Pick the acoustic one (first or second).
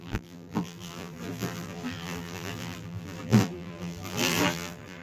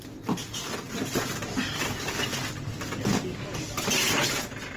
second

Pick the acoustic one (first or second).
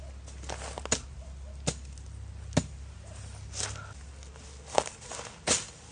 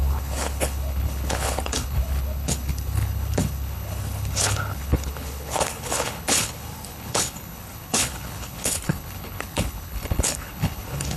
first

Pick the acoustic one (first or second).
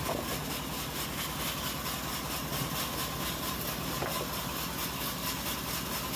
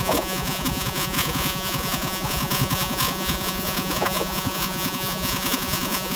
first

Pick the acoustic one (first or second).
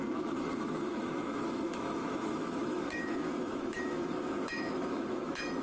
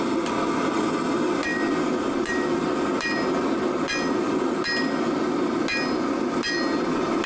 second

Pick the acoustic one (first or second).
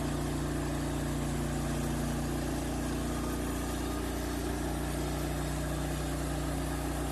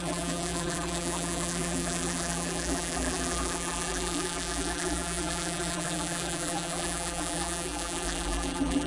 first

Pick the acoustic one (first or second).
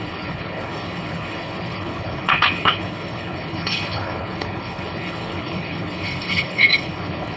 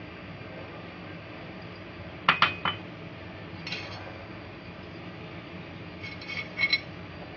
second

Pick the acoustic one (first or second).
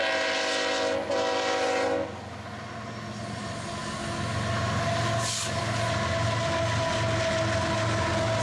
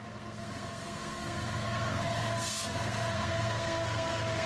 first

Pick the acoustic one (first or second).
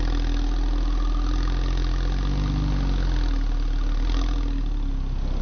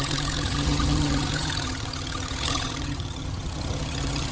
first